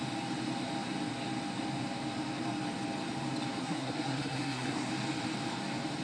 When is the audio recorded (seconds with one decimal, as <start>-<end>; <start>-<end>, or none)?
0.0-3.6; 4.9-6.0